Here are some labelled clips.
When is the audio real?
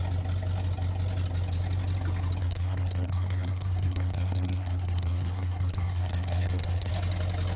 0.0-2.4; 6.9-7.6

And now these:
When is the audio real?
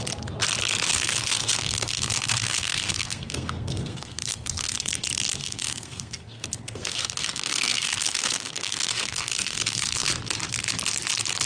0.0-0.9; 4.9-5.4; 10.1-11.5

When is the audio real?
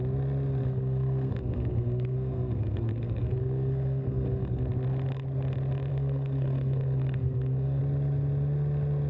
0.0-0.6; 4.6-5.9; 7.8-9.1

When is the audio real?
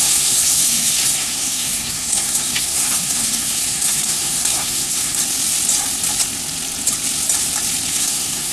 5.2-7.9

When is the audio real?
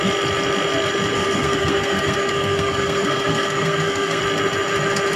0.0-1.1; 4.2-5.2